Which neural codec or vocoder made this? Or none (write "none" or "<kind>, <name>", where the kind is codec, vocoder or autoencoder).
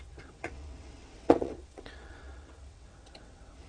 vocoder, WaveNeXt